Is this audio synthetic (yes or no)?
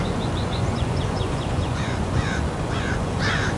yes